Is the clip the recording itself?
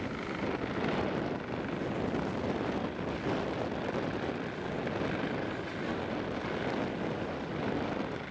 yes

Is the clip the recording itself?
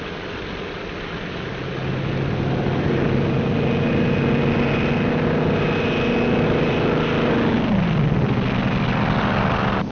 yes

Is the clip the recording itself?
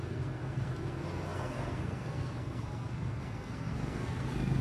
no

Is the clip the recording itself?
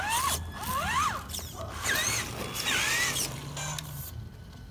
yes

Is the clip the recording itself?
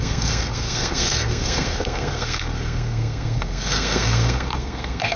no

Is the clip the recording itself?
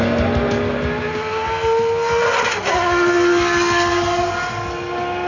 yes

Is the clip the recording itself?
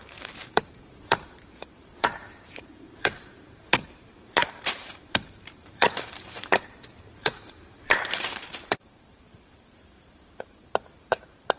no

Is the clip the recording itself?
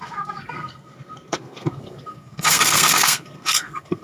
no